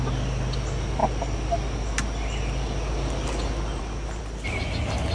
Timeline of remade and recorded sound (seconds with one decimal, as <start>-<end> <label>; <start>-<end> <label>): 0.0-5.1 recorded